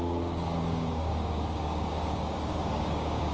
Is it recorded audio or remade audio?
remade